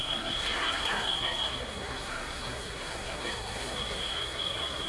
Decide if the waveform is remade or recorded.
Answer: remade